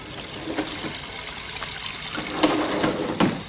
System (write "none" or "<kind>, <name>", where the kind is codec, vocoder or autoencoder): none